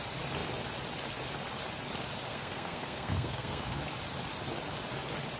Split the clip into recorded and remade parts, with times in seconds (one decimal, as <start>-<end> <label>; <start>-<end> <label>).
0.0-2.3 recorded; 2.3-3.8 remade; 3.8-5.4 recorded